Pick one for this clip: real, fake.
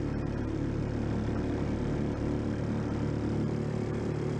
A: real